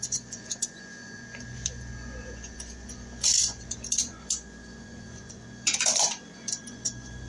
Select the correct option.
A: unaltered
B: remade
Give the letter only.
B